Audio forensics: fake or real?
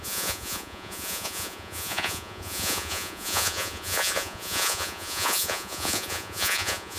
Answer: fake